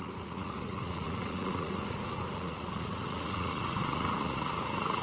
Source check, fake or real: fake